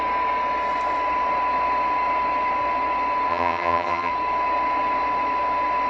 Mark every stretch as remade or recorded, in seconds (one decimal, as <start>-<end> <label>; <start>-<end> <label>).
0.0-3.3 recorded; 3.3-4.1 remade; 4.1-5.9 recorded